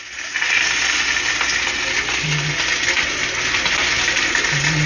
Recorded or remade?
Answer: recorded